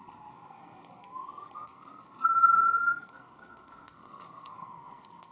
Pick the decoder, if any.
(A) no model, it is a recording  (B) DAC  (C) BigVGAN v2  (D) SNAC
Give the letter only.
D